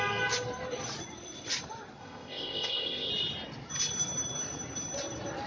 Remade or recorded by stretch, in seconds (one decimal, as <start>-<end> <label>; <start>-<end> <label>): 0.0-2.0 recorded; 2.0-3.1 remade; 3.1-5.5 recorded